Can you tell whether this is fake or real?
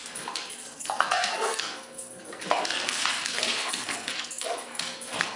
fake